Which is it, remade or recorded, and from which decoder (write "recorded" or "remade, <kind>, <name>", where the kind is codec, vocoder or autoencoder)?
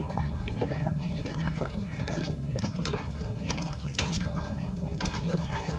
remade, codec, SNAC